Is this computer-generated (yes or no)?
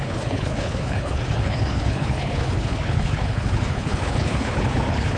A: yes